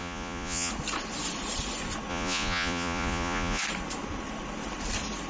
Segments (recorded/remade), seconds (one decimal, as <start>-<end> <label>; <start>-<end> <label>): 0.0-0.7 remade; 0.7-2.1 recorded; 2.1-3.6 remade; 3.6-5.3 recorded